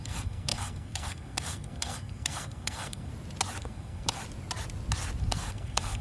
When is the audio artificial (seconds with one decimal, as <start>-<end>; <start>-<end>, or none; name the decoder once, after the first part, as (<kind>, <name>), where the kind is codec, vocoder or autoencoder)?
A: 0.0-3.1 (codec, SNAC); 3.6-4.2; 5.2-6.0